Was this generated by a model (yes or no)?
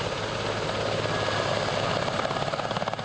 no